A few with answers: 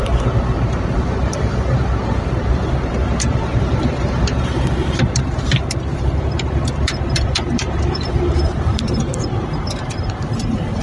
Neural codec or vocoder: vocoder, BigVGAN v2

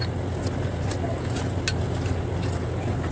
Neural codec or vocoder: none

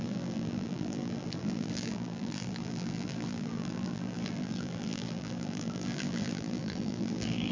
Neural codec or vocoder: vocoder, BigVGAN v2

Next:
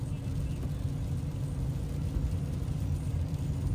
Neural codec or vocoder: none